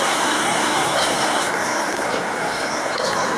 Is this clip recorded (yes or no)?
no